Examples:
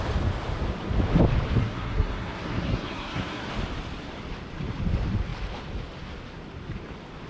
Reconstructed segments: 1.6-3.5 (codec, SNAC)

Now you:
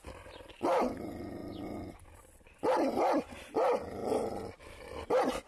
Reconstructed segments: none